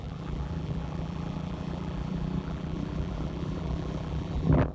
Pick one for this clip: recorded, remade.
remade